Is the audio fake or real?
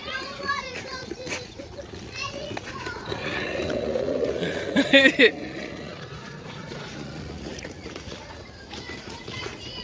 fake